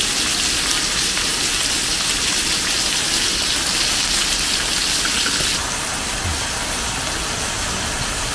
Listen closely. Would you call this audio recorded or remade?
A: recorded